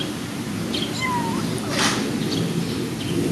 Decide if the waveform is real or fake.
real